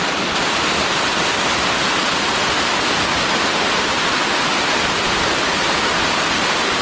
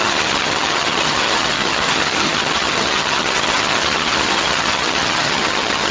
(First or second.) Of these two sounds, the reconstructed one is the second